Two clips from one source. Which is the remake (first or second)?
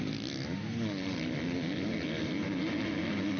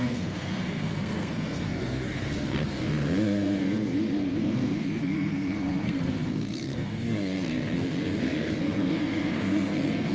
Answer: second